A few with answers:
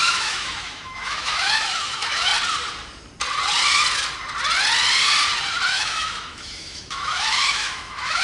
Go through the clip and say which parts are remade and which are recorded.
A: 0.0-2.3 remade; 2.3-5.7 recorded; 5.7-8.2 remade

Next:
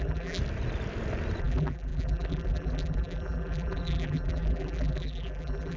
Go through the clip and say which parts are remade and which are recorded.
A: 0.0-0.4 remade; 0.4-1.4 recorded; 1.4-5.8 remade

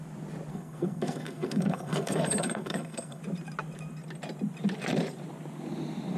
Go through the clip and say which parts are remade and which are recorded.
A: 0.0-0.5 recorded; 0.5-3.2 remade; 3.2-6.2 recorded